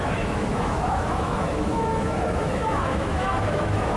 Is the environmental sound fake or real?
fake